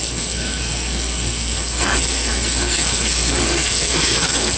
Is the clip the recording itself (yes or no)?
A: no